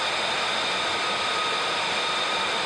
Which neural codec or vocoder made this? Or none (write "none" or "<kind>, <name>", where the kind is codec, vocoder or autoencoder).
none